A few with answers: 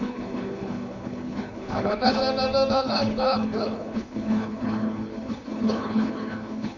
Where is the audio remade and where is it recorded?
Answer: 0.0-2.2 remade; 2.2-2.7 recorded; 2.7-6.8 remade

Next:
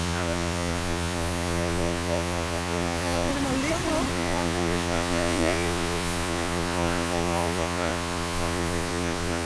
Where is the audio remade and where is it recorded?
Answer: 0.0-3.3 remade; 3.3-4.1 recorded; 4.1-9.5 remade

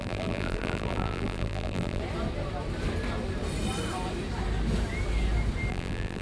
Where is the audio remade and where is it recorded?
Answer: 0.0-2.0 remade; 2.0-5.7 recorded; 5.7-6.2 remade

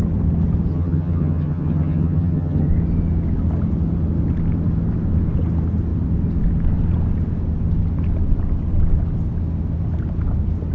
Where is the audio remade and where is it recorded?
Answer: 0.0-0.7 recorded; 0.7-2.7 remade; 2.7-10.7 recorded

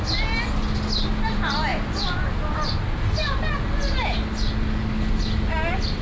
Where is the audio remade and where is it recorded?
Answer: 0.0-6.0 recorded

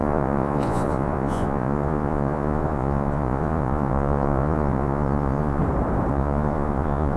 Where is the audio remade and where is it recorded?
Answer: 0.0-5.6 remade; 5.6-6.1 recorded; 6.1-7.2 remade

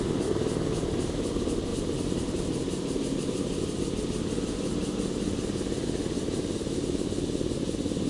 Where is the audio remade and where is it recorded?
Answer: 0.0-1.7 recorded; 1.7-3.8 remade; 3.8-8.1 recorded